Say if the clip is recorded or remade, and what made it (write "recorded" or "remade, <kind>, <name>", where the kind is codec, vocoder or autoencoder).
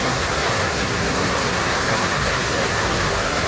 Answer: remade, codec, SNAC